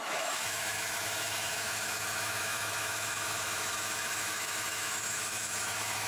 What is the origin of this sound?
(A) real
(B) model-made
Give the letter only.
B